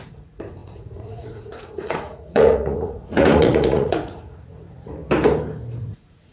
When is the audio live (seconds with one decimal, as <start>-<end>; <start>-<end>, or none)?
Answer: 5.0-5.8